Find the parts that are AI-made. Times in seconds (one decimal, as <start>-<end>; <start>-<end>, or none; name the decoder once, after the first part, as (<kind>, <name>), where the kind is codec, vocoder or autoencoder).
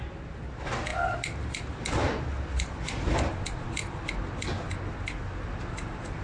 none